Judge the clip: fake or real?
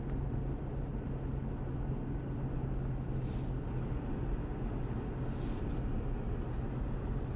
real